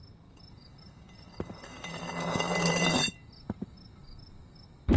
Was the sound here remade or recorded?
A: recorded